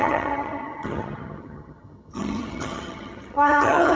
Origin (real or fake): fake